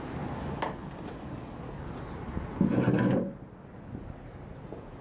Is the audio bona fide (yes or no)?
yes